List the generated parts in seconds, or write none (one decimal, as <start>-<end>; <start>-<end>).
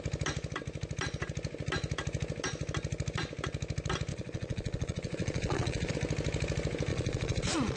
4.1-5.9; 6.9-7.8